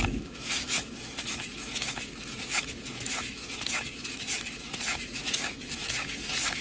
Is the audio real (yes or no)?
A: no